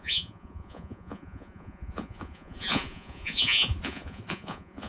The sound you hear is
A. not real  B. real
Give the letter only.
A